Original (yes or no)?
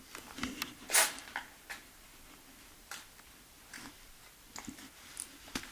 yes